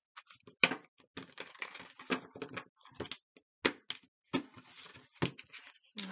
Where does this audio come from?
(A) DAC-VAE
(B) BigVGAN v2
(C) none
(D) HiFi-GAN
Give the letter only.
C